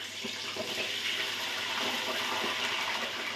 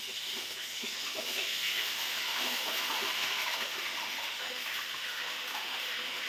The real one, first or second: first